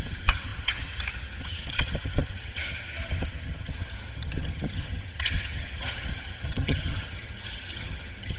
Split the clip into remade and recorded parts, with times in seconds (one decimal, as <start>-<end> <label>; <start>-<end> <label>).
0.0-8.4 remade